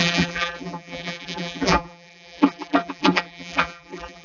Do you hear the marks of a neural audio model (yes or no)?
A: yes